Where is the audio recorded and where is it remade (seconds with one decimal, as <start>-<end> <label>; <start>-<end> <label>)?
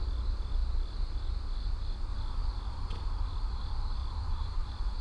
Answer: 0.0-2.1 recorded; 2.1-2.9 remade; 2.9-4.0 recorded; 4.0-5.0 remade